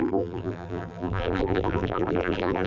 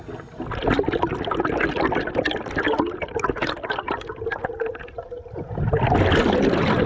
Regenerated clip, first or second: first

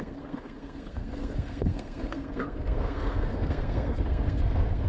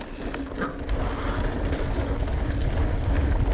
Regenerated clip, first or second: first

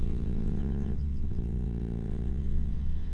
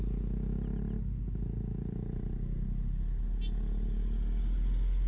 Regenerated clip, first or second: first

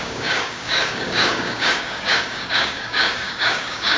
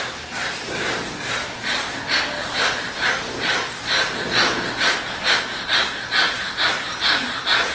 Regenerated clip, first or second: first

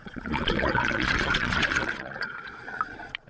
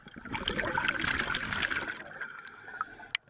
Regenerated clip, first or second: first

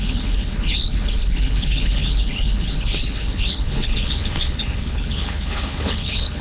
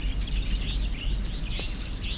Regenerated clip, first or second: first